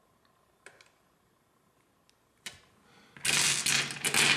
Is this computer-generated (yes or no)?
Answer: no